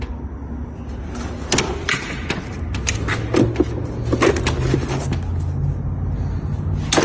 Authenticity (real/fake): real